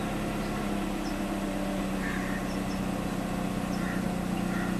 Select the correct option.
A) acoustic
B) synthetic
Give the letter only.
A